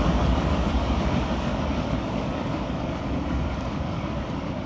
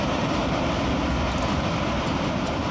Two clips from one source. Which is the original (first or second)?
second